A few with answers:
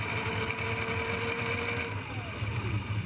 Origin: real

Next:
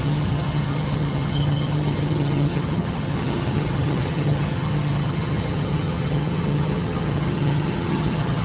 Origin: fake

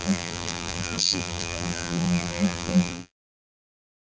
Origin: fake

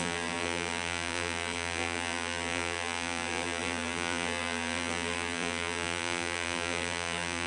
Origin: fake